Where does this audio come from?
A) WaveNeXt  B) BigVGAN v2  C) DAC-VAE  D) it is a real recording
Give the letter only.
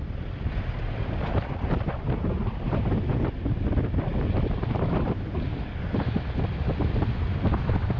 B